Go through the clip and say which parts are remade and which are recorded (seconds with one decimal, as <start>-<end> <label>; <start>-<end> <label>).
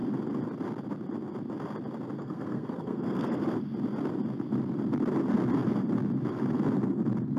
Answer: 0.0-2.2 recorded; 2.2-3.4 remade; 3.4-7.4 recorded